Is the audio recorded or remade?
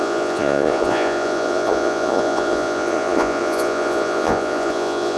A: remade